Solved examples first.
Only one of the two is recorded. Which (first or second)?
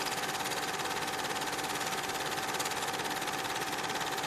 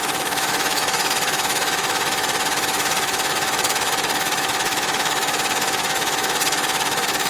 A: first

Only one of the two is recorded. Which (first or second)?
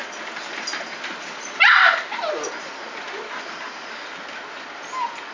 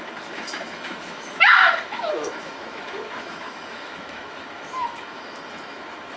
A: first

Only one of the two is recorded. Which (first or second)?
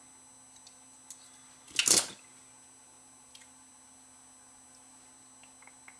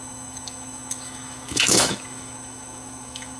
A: first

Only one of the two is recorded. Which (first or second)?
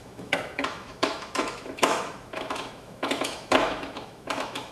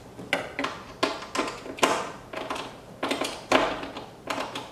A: second